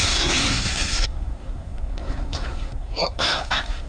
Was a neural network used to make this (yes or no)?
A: yes